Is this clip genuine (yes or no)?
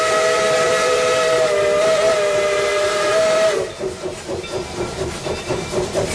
no